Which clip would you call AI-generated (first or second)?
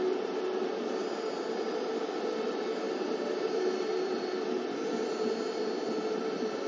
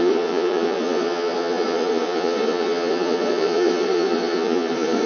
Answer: second